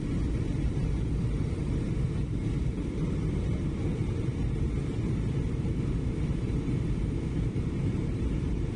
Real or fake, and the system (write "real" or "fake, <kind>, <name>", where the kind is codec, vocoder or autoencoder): fake, vocoder, BigVGAN v2